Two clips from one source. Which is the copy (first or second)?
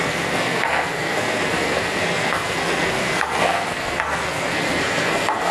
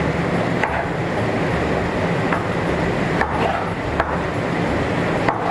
first